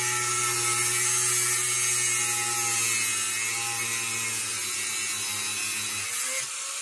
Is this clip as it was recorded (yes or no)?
yes